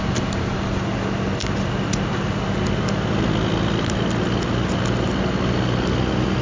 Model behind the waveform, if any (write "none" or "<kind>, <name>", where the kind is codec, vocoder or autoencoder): none